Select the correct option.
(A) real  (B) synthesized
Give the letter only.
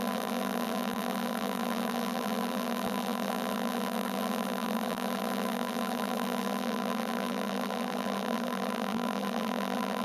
B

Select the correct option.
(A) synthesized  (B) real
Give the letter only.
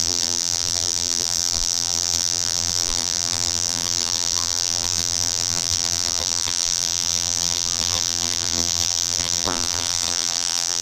A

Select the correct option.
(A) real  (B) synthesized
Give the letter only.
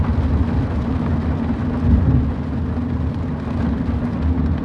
A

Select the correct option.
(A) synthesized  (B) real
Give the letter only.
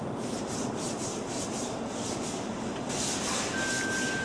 B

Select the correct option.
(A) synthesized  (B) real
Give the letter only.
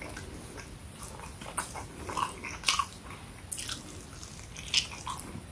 B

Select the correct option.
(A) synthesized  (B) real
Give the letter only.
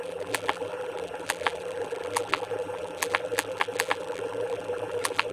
A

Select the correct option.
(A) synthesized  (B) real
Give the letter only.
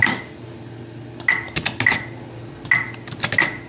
B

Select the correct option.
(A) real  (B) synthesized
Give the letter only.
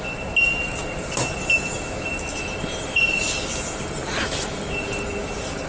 A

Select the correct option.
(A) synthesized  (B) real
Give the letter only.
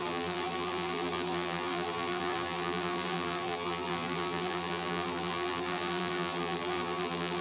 A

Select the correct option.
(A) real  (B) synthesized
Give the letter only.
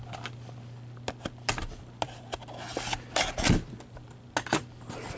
A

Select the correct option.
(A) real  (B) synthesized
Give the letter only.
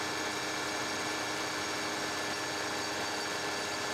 A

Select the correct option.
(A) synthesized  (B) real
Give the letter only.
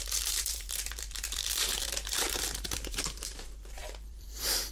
A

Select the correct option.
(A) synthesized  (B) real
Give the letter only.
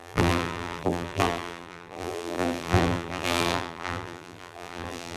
A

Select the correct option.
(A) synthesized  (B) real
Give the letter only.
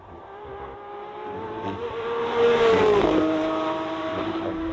A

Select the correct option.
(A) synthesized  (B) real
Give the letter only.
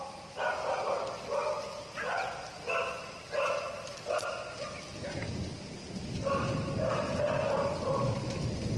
B